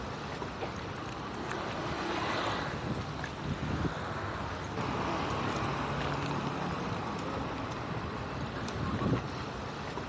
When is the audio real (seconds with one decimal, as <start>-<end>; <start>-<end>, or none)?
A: 0.0-10.1